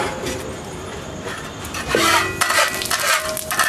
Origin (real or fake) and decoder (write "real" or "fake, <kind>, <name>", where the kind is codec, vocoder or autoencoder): real